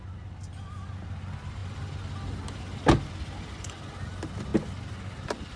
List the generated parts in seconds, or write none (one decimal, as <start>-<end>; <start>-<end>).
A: none